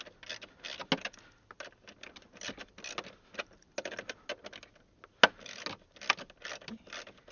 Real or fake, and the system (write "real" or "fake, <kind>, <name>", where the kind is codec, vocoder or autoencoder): real